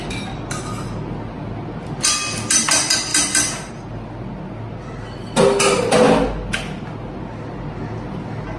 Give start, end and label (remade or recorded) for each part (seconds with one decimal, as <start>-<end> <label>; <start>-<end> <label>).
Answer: 0.0-8.6 recorded